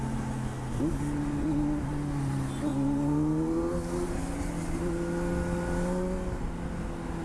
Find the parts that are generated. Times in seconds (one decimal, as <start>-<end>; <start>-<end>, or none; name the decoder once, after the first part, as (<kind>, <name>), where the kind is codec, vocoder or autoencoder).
none